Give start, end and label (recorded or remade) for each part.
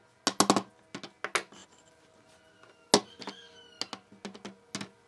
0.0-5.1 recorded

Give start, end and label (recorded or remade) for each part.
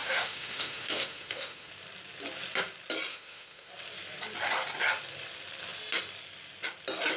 0.0-1.7 remade; 1.7-3.1 recorded; 3.1-3.7 remade; 3.7-7.2 recorded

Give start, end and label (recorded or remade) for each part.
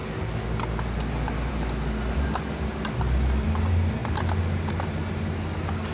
0.0-5.9 recorded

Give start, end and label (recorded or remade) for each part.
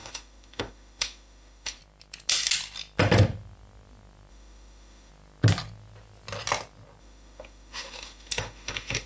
0.0-1.8 remade; 1.8-4.3 recorded; 4.3-5.1 remade; 5.1-7.0 recorded; 7.0-9.1 remade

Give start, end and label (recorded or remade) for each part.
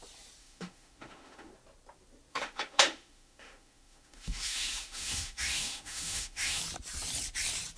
0.0-0.4 recorded; 0.4-1.5 remade; 1.5-2.3 recorded; 2.3-6.6 remade; 6.6-7.8 recorded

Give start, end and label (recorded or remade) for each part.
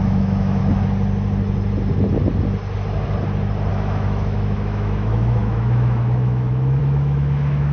0.0-0.6 remade; 0.6-3.7 recorded; 3.7-7.7 remade